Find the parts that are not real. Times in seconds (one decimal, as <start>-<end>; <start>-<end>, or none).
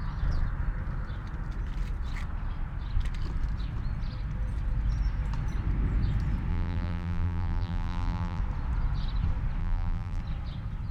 6.5-8.4; 9.6-10.2